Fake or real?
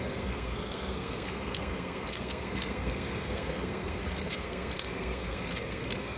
fake